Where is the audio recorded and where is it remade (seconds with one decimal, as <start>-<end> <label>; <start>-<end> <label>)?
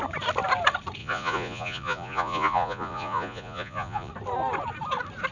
0.0-1.0 recorded; 1.0-4.1 remade; 4.1-5.3 recorded